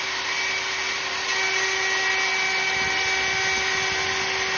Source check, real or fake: real